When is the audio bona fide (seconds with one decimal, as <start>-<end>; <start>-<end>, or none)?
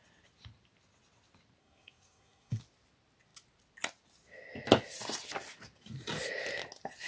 0.0-1.6; 2.6-7.1